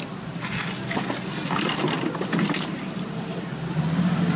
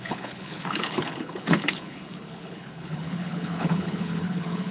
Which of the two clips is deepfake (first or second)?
second